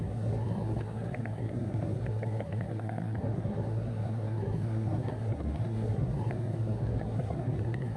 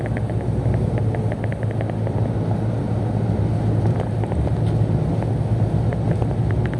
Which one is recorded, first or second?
second